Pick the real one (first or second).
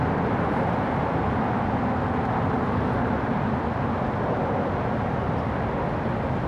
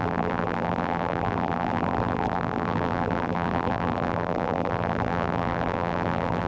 first